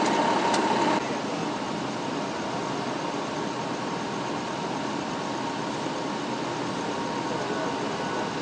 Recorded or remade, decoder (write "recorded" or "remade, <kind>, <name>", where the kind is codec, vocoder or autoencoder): recorded